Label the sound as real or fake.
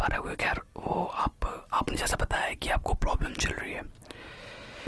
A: fake